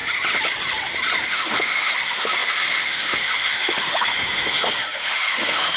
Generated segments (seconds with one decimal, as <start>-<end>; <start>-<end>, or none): 1.2-5.8